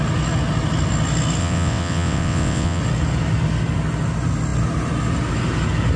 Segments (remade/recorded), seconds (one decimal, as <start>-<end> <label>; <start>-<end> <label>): 0.0-1.4 recorded; 1.4-2.8 remade; 2.8-6.0 recorded